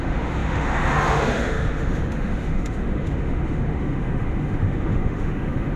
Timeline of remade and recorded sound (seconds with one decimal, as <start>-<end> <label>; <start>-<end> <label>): 0.0-5.8 remade